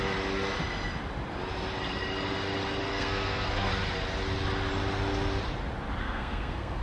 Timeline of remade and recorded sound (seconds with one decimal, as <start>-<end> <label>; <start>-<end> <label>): 0.0-2.9 recorded; 2.9-3.7 remade; 3.7-6.0 recorded; 6.0-6.8 remade